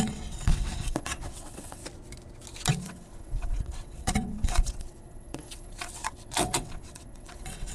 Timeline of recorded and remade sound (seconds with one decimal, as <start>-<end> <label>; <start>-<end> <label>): 0.0-1.8 remade; 1.8-2.7 recorded; 2.7-7.7 remade